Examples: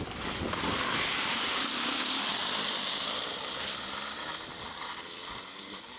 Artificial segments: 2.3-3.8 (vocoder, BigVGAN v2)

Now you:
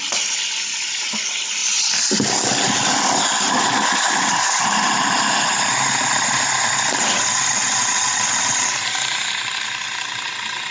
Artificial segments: none

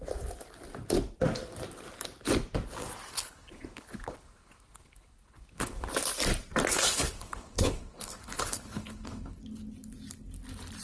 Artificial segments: 3.1-5.9 (codec, HILCodec); 6.7-9.4

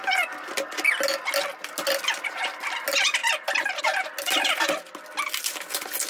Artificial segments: none

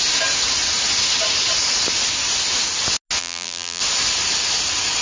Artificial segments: 3.2-3.8 (vocoder, BigVGAN v2)

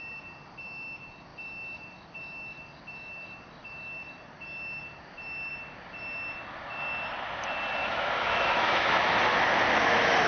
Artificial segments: 7.8-8.9 (autoencoder, DAC-VAE)